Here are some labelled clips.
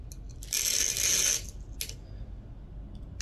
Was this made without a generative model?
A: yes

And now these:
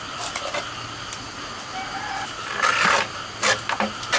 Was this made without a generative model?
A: yes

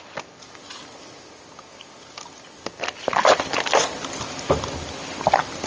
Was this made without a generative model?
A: yes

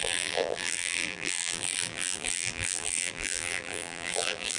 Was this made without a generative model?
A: no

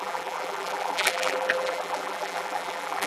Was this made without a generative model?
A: no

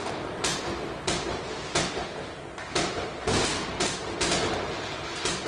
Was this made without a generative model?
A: yes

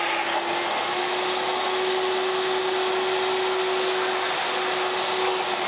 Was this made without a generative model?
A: yes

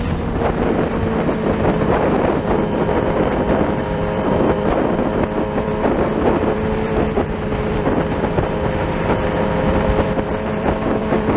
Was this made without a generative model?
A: no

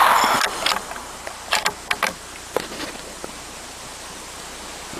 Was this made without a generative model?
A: yes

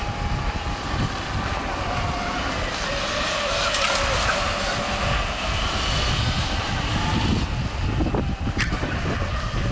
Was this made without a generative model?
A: yes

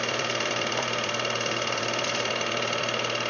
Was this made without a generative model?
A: no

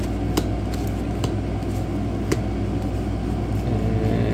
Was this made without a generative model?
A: yes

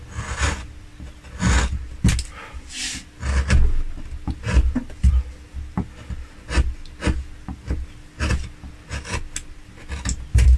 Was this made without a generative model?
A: yes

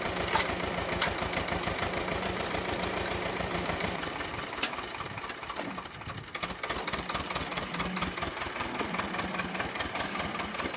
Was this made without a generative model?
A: no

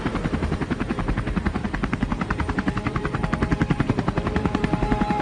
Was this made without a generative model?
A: no